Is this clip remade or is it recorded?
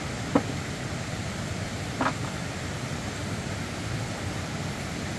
recorded